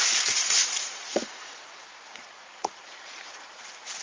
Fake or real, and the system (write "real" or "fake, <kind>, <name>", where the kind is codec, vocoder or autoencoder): fake, vocoder, Vocos